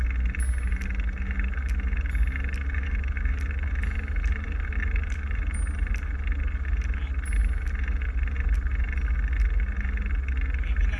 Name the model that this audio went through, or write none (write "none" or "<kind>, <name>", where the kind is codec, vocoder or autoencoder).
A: none